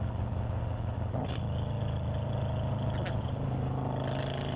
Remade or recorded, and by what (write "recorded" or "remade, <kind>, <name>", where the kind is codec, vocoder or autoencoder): recorded